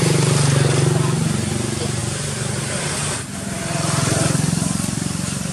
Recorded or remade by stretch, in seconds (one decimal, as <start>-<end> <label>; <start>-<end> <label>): 0.0-5.5 recorded